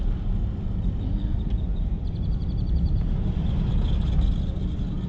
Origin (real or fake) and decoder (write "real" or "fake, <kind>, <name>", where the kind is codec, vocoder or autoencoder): real